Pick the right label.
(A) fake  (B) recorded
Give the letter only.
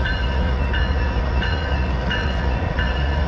A